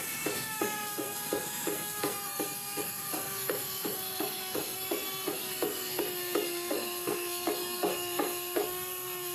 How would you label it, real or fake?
fake